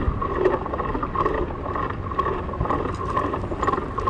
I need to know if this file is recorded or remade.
recorded